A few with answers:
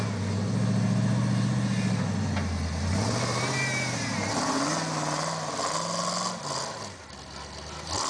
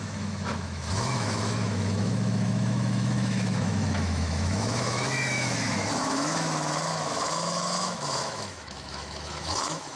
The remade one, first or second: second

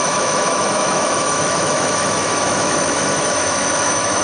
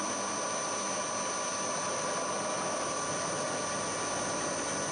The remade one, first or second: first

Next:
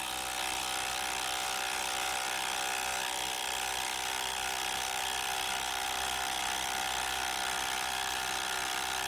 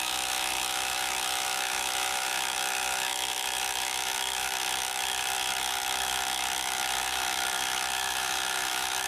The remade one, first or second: second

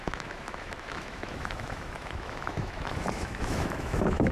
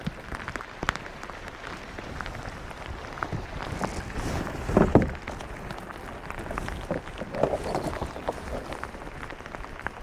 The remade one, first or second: first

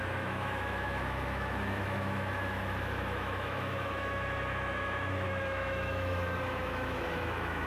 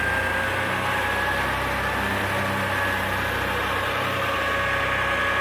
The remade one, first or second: first